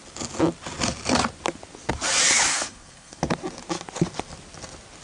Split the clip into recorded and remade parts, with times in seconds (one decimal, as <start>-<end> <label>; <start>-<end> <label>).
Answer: 0.0-2.5 recorded; 2.5-3.2 remade; 3.2-5.0 recorded